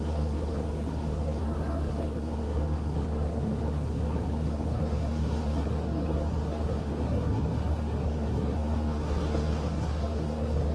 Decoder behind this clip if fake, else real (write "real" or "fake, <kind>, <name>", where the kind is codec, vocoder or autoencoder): fake, codec, SNAC